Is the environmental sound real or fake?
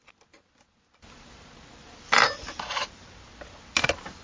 real